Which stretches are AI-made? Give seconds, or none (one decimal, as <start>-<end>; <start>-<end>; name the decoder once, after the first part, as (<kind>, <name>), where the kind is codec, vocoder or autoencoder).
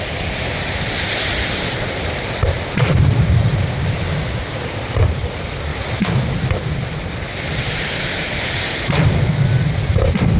1.3-5.2 (vocoder, BigVGAN v2)